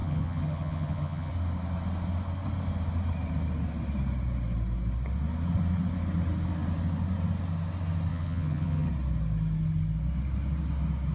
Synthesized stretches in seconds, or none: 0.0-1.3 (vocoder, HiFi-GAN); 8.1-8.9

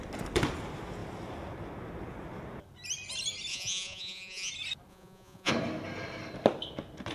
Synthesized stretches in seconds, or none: 3.5-4.5 (vocoder, Vocos); 4.9-5.5

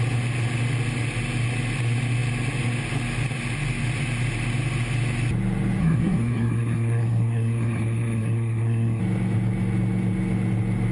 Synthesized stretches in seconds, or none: 5.8-9.0 (codec, SNAC)

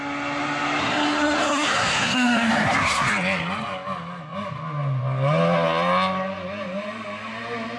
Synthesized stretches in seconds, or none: 0.8-3.1 (codec, SNAC)

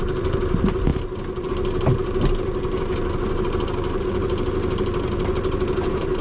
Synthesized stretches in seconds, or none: none

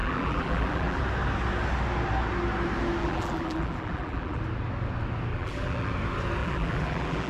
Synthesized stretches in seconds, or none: 0.0-1.0 (vocoder, BigVGAN v2); 3.0-4.4; 5.3-5.9; 6.4-7.3

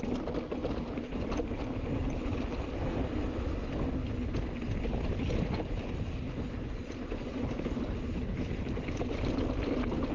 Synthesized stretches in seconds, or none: 0.6-2.2 (vocoder, BigVGAN v2); 4.9-10.1